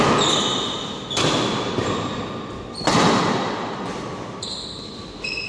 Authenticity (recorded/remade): recorded